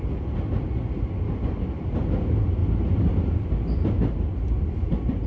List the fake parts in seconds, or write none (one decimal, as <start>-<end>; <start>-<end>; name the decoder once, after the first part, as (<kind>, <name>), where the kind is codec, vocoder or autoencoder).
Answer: none